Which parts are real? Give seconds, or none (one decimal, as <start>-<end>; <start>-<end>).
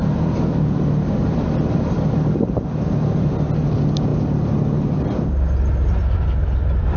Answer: 0.0-7.0